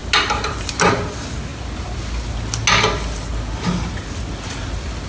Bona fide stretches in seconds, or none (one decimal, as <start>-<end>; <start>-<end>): 0.0-5.1